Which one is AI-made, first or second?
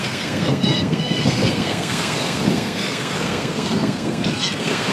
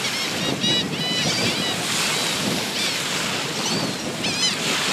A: first